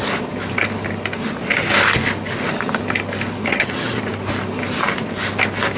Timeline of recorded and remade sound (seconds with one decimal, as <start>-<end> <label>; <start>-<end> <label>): 0.0-3.5 recorded; 3.5-4.0 remade; 4.0-5.8 recorded